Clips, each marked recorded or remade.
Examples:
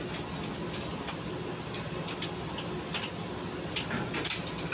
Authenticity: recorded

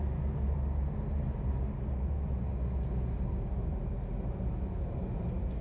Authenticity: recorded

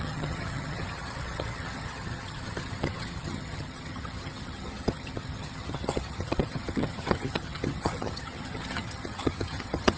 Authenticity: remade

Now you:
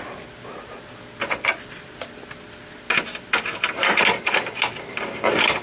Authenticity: recorded